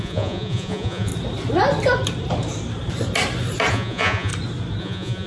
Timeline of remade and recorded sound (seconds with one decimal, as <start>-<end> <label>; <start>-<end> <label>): 0.0-1.1 remade; 1.1-3.7 recorded; 3.7-4.3 remade; 4.3-4.8 recorded; 4.8-5.3 remade

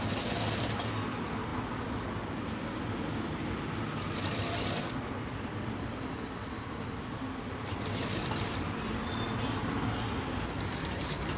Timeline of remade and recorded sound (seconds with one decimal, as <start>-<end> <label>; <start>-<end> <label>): 0.0-11.4 recorded

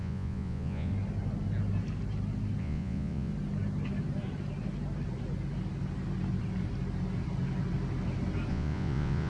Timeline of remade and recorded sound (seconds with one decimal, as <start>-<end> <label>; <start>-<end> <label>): 0.0-0.9 remade; 0.9-2.6 recorded; 2.6-3.3 remade; 3.3-8.5 recorded; 8.5-9.3 remade

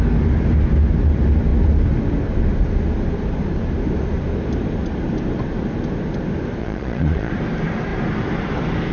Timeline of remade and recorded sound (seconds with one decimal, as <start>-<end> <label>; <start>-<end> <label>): 0.0-6.6 recorded; 6.6-7.3 remade; 7.3-8.9 recorded